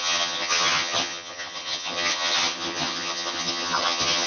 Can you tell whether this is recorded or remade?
remade